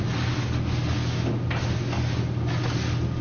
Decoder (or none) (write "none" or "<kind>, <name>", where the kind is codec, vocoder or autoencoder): none